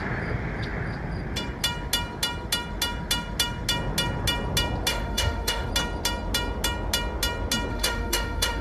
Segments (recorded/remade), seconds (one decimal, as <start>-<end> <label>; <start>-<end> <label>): 0.0-4.9 recorded; 4.9-5.7 remade; 5.7-7.7 recorded; 7.7-8.6 remade